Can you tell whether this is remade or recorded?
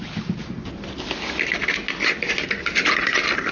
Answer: recorded